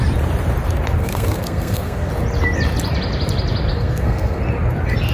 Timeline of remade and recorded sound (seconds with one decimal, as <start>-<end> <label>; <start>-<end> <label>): 0.0-1.0 recorded; 1.0-2.1 remade; 2.1-3.7 recorded; 3.7-4.4 remade; 4.4-5.1 recorded